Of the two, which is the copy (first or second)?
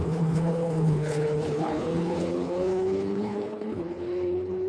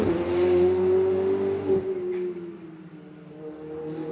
first